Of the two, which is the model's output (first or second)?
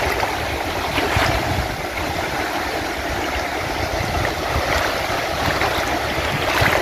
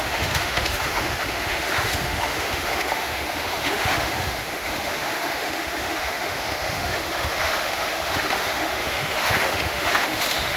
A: second